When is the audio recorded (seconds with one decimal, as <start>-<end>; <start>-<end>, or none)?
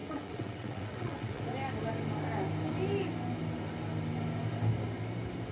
1.4-5.5